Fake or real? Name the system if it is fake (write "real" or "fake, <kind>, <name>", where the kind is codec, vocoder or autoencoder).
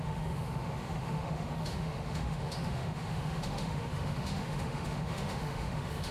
fake, autoencoder, DAC-VAE